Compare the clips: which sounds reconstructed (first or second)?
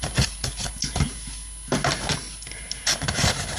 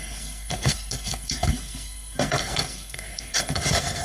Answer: second